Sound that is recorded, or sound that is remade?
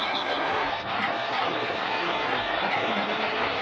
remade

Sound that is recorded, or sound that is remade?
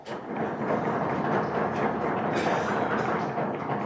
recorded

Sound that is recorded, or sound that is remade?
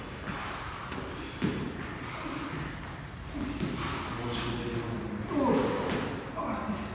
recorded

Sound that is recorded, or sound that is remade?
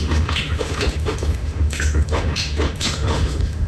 remade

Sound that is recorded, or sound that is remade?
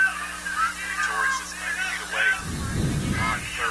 recorded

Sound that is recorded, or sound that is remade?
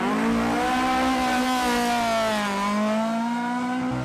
recorded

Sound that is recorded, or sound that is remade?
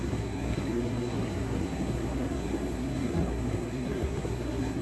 remade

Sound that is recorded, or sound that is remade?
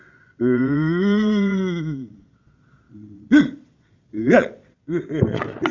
remade